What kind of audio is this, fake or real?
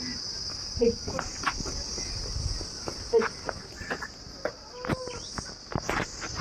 real